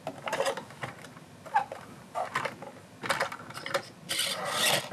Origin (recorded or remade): recorded